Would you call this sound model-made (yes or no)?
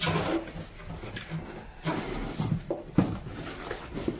no